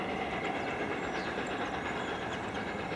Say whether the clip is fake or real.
real